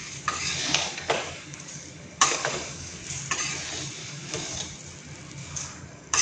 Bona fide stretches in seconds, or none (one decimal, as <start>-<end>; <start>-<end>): 3.0-4.0; 4.6-5.4